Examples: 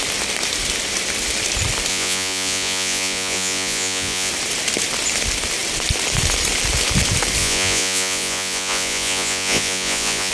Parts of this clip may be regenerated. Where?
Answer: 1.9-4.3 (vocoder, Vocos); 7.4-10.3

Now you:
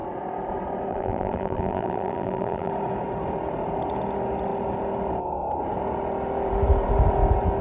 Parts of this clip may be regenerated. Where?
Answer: 0.9-2.7 (vocoder, BigVGAN v2)

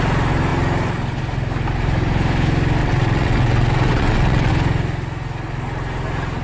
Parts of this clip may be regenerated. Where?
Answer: 2.8-4.5 (vocoder, WaveNeXt)

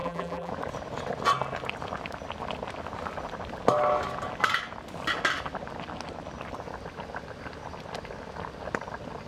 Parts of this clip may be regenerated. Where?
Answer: 0.0-0.5 (vocoder, BigVGAN v2)

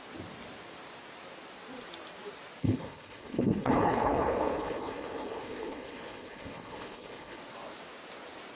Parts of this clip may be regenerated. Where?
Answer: 2.6-7.4 (codec, HILCodec)

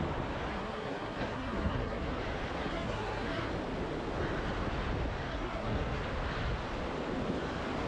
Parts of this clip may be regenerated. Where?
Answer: 0.5-2.2 (codec, SNAC); 2.6-3.5; 5.3-6.0